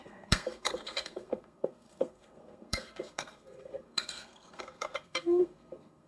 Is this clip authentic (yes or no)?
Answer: no